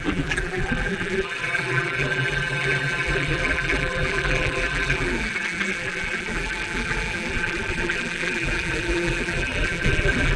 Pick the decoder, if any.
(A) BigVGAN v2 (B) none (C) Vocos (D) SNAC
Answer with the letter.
A